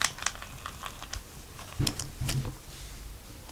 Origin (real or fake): real